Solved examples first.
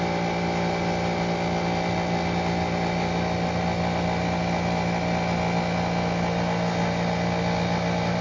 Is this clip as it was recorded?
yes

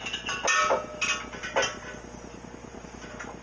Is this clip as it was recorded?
yes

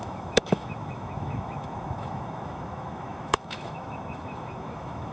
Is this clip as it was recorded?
no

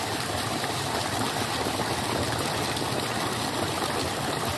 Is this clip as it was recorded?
yes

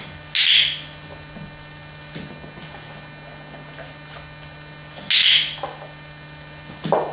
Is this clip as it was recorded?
yes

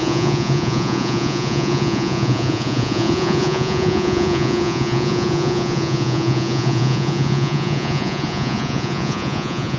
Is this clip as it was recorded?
no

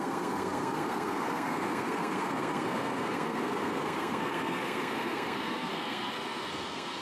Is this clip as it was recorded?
no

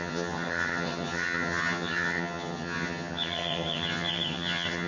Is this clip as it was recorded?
no